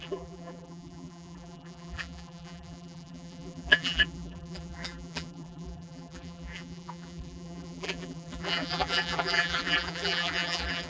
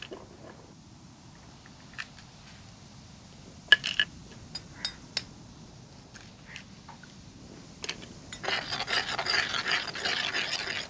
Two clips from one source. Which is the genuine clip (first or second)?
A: second